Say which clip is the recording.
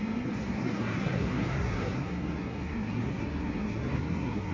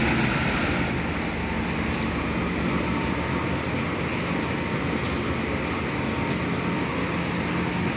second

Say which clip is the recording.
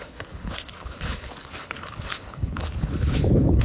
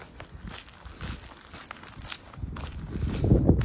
second